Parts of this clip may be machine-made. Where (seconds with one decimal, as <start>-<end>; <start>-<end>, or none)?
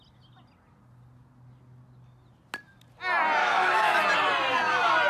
3.4-4.0